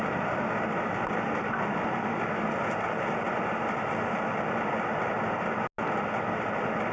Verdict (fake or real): real